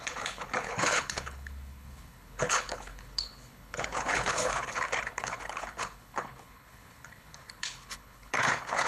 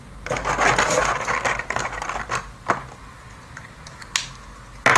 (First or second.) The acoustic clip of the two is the second